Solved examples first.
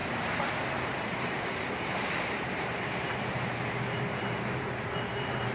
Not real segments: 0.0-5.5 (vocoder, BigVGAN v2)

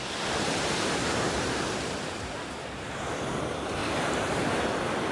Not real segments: 0.0-3.1 (vocoder, BigVGAN v2); 3.8-4.6

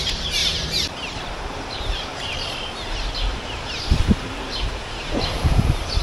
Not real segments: 0.0-6.0 (vocoder, BigVGAN v2)

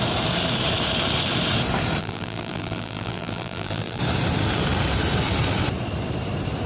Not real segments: 2.0-4.0 (vocoder, BigVGAN v2)

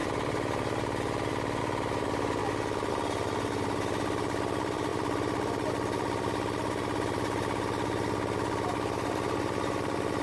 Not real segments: 0.0-2.4 (vocoder, BigVGAN v2); 2.9-10.2

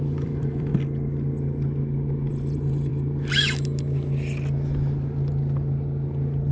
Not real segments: 0.0-0.7 (vocoder, BigVGAN v2); 2.3-2.9

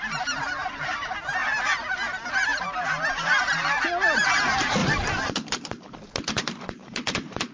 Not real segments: 0.0-1.4 (vocoder, BigVGAN v2); 3.1-4.8; 5.3-7.5